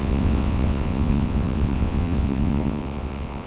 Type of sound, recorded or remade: remade